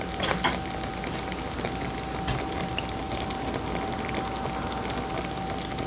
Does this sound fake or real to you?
real